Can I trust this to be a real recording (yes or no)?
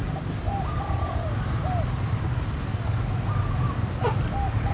yes